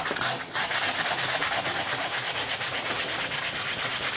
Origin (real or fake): real